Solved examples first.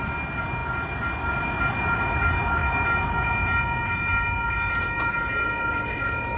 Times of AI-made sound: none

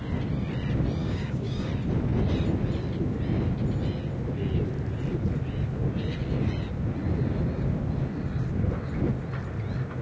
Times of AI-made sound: 1.0-1.7 (codec, DAC)

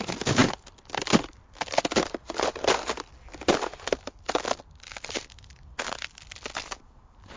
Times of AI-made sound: none

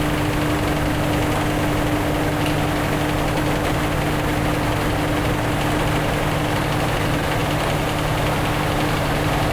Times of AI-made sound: none

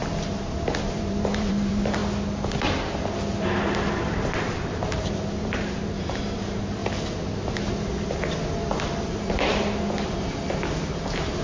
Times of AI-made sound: 0.8-2.0 (vocoder, BigVGAN v2); 4.0-6.8; 9.0-11.4

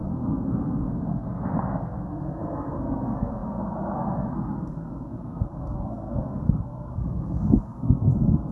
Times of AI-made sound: 0.0-8.5 (codec, SNAC)

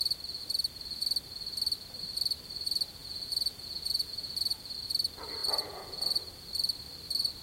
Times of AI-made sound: 3.0-4.6 (vocoder, Vocos); 5.4-6.5